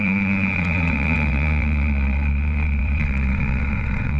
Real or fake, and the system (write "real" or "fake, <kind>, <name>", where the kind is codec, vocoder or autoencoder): fake, vocoder, WaveNeXt